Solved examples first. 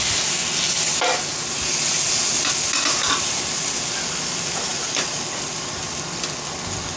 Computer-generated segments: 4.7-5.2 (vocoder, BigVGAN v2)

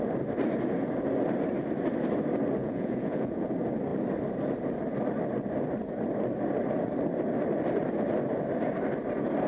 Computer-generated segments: 2.6-3.5 (vocoder, Vocos)

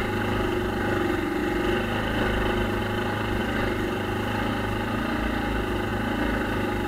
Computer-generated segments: none